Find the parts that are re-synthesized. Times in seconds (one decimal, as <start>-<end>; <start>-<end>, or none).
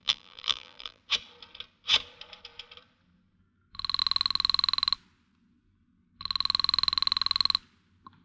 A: 0.0-1.0